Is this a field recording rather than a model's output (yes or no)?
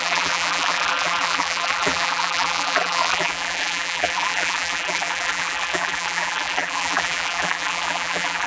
no